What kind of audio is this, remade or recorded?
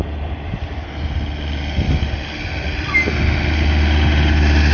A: recorded